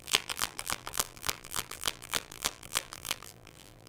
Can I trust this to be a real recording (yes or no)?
no